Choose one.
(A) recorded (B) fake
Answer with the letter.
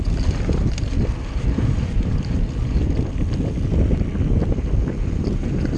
A